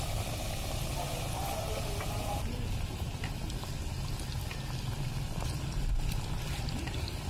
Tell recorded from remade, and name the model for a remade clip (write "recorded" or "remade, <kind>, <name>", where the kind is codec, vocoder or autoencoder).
recorded